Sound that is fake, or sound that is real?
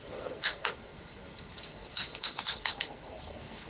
fake